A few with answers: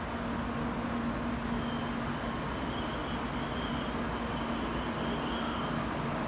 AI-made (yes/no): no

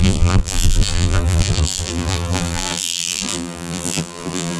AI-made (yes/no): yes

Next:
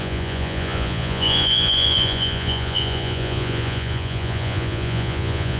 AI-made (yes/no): yes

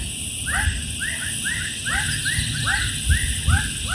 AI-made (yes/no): no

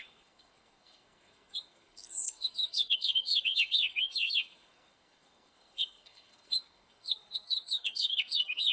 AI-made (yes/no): yes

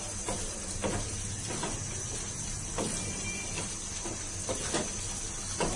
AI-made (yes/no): no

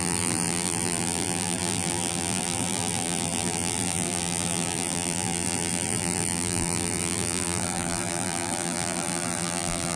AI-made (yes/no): yes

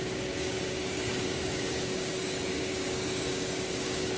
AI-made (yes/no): yes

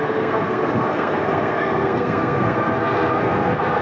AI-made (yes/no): yes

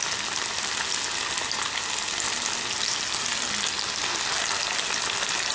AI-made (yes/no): no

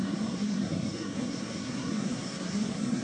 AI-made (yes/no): yes